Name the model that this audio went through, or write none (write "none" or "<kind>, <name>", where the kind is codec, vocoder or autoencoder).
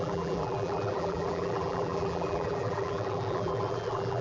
vocoder, BigVGAN v2